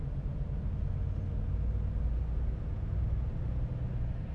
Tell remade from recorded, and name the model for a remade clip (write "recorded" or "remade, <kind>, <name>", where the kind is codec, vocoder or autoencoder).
recorded